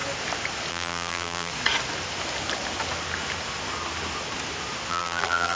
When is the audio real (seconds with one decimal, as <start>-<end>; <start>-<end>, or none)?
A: 0.0-0.7; 1.5-4.9

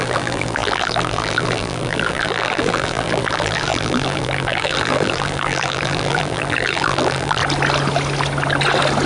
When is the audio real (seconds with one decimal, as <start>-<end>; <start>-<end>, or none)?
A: 7.4-9.1

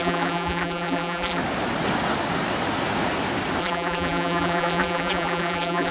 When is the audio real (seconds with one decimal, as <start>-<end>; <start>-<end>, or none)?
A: 1.4-3.6

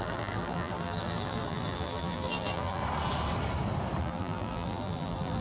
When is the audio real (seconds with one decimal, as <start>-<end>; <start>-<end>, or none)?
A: 2.8-4.0

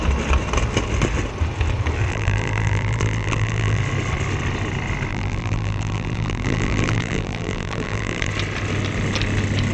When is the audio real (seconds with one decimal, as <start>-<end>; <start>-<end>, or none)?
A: 0.0-2.1; 3.8-5.1; 8.3-9.7

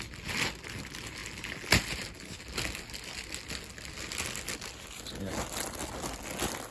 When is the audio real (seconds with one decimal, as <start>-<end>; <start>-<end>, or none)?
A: 0.0-6.7

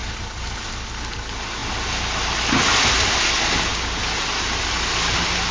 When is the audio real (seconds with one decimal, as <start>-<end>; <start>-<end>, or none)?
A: 0.7-5.5